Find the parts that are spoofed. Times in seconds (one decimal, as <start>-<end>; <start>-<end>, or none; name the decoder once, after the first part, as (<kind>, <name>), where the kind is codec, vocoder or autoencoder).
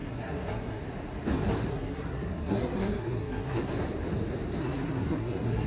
0.0-0.8 (codec, SNAC); 1.7-3.6; 4.6-5.7